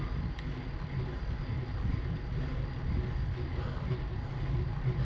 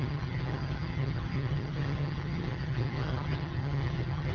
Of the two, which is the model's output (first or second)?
second